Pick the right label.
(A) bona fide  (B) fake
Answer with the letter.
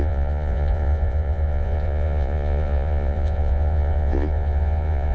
B